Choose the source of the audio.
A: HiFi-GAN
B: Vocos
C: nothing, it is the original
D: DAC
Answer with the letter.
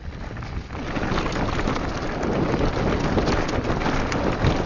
C